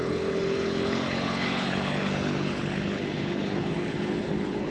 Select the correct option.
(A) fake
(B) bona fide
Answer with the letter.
A